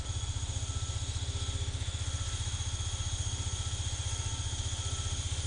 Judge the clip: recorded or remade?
recorded